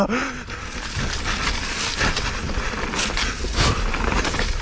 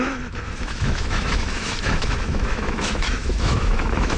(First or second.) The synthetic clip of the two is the second